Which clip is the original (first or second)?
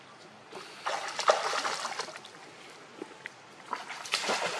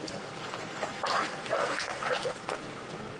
first